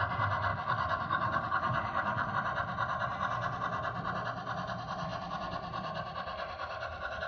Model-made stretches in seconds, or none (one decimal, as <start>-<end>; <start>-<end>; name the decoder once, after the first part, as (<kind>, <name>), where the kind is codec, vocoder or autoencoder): 0.5-2.3 (codec, DAC)